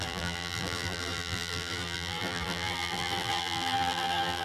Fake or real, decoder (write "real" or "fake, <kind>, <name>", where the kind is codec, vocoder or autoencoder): fake, vocoder, BigVGAN v2